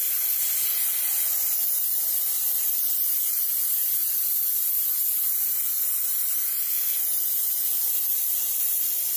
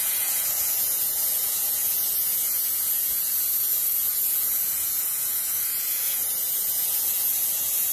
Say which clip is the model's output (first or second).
second